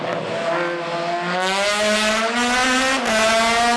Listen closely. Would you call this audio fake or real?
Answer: real